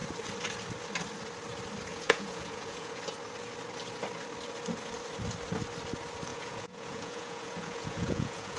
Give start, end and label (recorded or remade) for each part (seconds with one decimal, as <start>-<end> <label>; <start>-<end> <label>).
0.0-1.9 recorded; 1.9-3.0 remade; 3.0-6.3 recorded; 6.3-8.6 remade

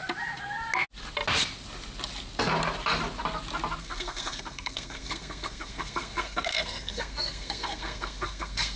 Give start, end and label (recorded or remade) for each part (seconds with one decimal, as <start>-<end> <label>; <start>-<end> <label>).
0.0-3.8 recorded; 3.8-8.8 remade

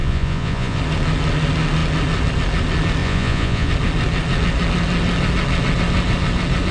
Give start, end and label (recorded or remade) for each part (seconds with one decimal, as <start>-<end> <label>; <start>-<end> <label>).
0.0-0.8 remade; 0.8-3.0 recorded; 3.0-3.7 remade; 3.7-6.7 recorded

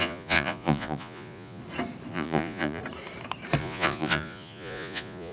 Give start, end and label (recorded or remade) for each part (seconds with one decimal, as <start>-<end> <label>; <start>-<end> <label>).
0.0-1.6 remade; 1.6-2.1 recorded; 2.1-2.8 remade; 2.8-3.6 recorded; 3.6-5.3 remade